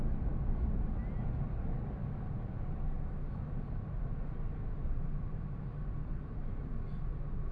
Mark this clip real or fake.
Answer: real